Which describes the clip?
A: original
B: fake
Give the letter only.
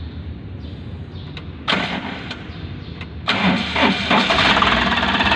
A